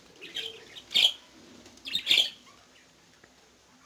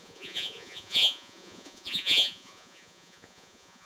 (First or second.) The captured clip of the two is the first